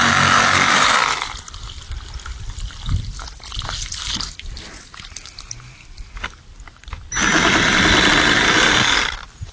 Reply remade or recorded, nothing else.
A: recorded